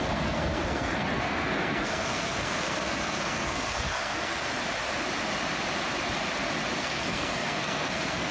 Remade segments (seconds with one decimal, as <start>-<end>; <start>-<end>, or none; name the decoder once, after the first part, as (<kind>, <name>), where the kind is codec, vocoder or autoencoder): 0.0-4.5 (codec, SNAC); 6.8-8.3